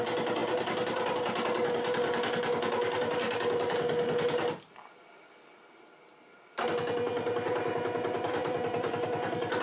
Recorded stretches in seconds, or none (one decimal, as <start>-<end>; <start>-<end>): 0.0-8.4